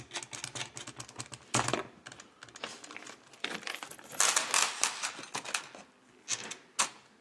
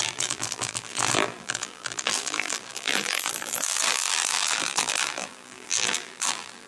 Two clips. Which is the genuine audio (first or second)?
first